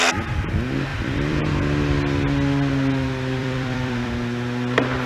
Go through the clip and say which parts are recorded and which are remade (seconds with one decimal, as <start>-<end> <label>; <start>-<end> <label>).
0.0-0.9 recorded; 0.9-1.4 remade; 1.4-3.4 recorded; 3.4-4.1 remade; 4.1-5.1 recorded